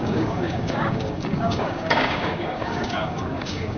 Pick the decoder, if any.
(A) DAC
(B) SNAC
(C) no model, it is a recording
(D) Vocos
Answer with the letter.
A